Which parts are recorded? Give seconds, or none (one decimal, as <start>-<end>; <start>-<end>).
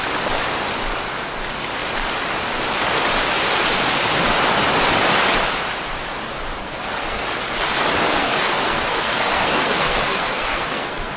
0.0-6.6; 7.2-8.1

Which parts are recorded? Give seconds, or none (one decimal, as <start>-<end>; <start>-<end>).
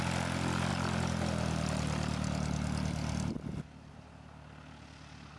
0.0-5.4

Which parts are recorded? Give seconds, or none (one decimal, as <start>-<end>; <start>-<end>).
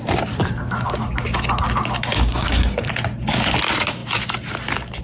0.0-2.3; 2.9-5.0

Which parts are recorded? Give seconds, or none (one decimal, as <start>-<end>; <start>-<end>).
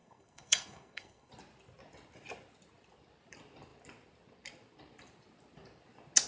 1.3-6.3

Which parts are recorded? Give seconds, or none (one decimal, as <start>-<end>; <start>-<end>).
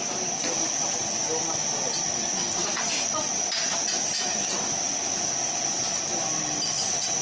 0.0-7.2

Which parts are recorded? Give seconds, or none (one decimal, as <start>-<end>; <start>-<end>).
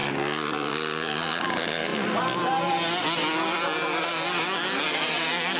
0.0-5.6